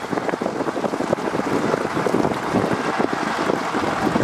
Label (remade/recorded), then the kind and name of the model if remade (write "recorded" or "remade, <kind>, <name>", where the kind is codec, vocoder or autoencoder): recorded